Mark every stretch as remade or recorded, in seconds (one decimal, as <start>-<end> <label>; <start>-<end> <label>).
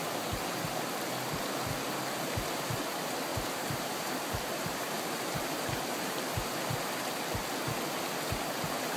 0.0-3.3 recorded; 3.3-6.3 remade; 6.3-9.0 recorded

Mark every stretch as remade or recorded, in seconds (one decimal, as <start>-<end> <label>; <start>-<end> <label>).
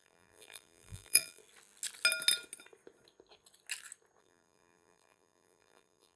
0.0-1.4 remade; 1.4-4.2 recorded; 4.2-6.2 remade